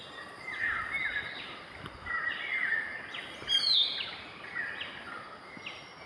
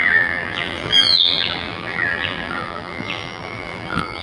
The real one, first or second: first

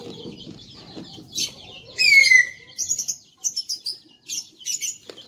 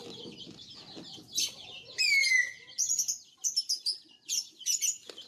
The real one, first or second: second